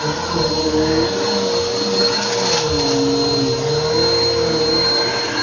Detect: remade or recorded recorded